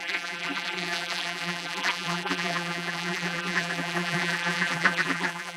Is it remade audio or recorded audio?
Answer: remade